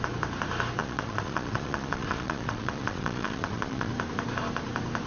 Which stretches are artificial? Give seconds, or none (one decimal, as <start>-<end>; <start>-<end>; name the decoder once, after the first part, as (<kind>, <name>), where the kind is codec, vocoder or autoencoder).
0.8-3.9 (vocoder, Vocos)